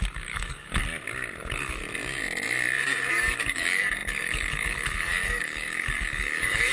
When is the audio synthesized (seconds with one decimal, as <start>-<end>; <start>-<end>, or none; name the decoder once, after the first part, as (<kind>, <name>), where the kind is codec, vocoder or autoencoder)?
0.0-0.8 (codec, DAC); 1.4-1.8; 3.1-6.7